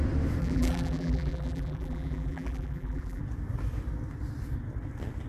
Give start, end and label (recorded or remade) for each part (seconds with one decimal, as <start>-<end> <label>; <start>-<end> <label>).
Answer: 0.0-0.4 recorded; 0.4-3.2 remade; 3.2-5.3 recorded